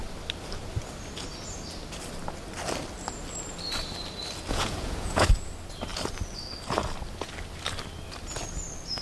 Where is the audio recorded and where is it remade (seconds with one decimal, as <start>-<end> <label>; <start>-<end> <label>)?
0.0-4.5 recorded; 4.5-5.3 remade; 5.3-9.0 recorded